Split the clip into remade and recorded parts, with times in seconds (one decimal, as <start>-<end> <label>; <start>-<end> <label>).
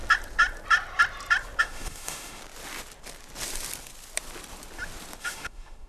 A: 0.0-1.6 recorded; 1.6-2.4 remade; 2.4-5.2 recorded; 5.2-5.9 remade